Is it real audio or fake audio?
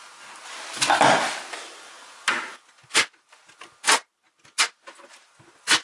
real